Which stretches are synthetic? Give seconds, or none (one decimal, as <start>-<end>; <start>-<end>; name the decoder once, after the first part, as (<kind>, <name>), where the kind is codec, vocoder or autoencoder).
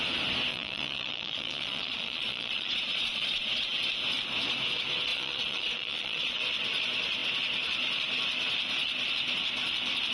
0.5-3.6 (vocoder, Vocos); 5.1-6.4